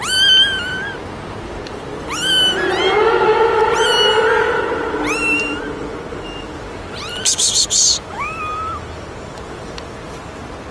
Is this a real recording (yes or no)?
yes